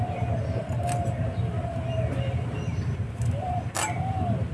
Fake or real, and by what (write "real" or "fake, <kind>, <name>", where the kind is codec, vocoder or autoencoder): real